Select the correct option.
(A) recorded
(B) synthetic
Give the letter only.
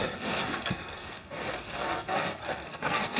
B